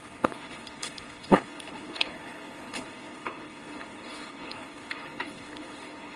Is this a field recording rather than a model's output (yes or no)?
no